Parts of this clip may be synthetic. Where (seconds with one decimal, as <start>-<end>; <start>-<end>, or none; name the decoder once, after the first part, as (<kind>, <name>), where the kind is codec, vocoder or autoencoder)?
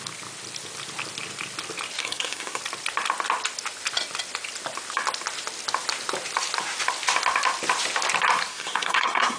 2.0-2.6 (codec, SNAC); 8.5-9.4